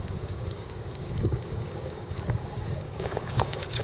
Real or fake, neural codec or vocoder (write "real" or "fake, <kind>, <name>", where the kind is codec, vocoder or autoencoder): fake, codec, DAC